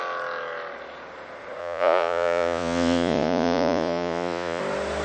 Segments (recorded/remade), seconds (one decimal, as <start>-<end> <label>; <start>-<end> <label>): 0.0-1.6 recorded; 1.6-4.6 remade; 4.6-5.0 recorded